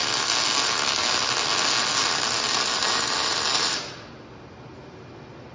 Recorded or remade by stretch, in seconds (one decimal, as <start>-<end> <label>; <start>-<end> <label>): 0.0-5.5 recorded